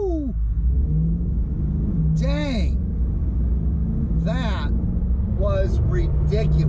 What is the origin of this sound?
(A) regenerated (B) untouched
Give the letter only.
B